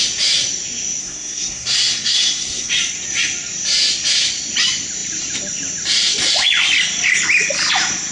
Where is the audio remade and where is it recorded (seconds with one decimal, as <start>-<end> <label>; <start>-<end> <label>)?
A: 0.0-1.0 recorded; 1.0-2.7 remade; 2.7-8.1 recorded